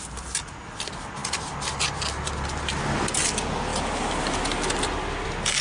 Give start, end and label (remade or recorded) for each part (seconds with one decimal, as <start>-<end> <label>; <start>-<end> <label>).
0.0-5.6 recorded